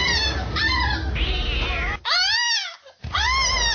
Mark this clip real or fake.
real